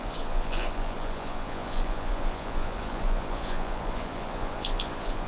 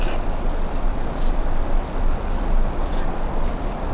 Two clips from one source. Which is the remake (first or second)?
first